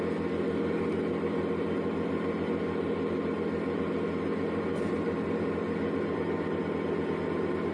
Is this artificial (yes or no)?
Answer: no